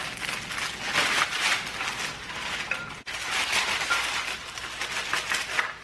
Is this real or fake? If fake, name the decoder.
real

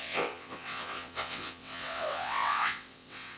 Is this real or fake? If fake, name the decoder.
fake, vocoder, WaveNeXt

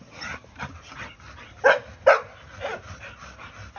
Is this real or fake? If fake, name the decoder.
real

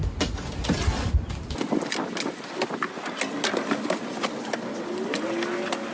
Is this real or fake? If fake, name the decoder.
real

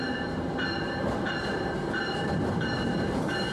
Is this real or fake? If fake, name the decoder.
fake, vocoder, BigVGAN v2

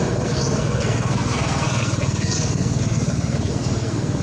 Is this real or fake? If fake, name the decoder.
fake, codec, SNAC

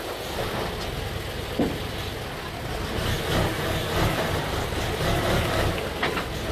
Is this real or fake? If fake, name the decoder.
real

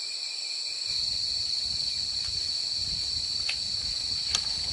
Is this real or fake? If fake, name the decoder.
real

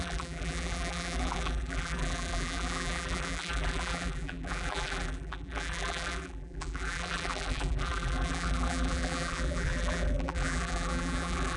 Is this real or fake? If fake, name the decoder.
fake, vocoder, BigVGAN v2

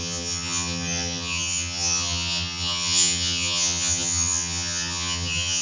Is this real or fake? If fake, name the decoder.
fake, vocoder, HiFi-GAN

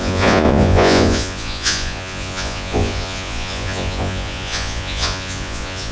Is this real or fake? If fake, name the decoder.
fake, vocoder, Vocos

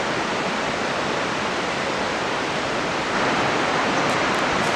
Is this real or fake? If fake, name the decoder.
fake, vocoder, BigVGAN v2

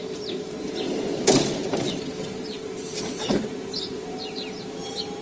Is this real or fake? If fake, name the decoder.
fake, vocoder, BigVGAN v2